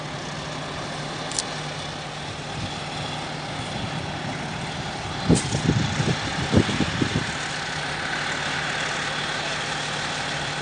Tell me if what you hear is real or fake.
real